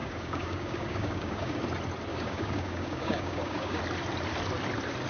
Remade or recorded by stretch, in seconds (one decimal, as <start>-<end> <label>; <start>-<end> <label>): 0.0-1.6 remade; 1.6-2.1 recorded; 2.1-3.8 remade; 3.8-5.1 recorded

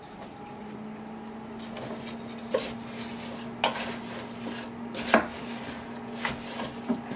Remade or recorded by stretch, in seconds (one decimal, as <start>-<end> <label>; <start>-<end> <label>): 0.0-7.2 recorded

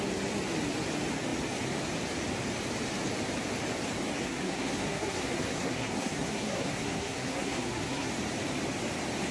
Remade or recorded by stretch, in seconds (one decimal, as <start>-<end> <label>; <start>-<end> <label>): 0.0-4.2 recorded; 4.2-8.1 remade; 8.1-9.3 recorded

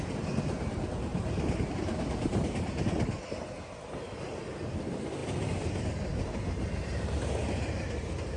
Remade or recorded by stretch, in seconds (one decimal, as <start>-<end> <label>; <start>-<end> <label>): 0.0-1.1 recorded; 1.1-2.8 remade; 2.8-8.4 recorded

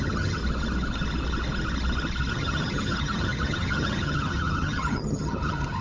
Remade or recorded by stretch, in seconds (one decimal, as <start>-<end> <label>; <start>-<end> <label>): 0.0-0.4 remade; 0.4-2.3 recorded; 2.3-5.8 remade